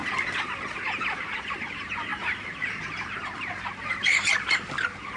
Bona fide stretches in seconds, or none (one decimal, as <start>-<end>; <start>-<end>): 0.0-1.4